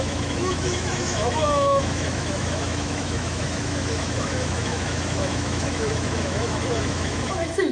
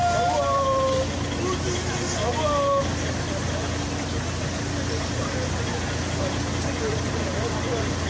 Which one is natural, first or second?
second